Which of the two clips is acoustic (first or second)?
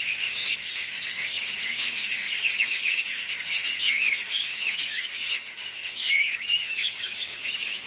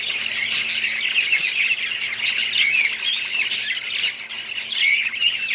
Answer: second